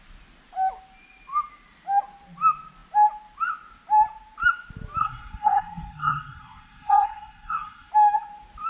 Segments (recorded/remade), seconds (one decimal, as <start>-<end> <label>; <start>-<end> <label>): 0.0-5.0 recorded; 5.0-7.9 remade; 7.9-8.7 recorded